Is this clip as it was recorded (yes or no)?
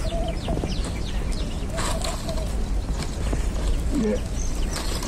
yes